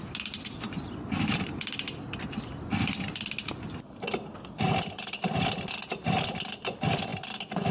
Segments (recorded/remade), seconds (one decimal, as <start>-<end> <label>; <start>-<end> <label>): 0.0-7.7 recorded